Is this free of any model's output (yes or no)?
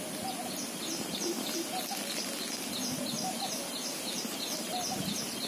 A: yes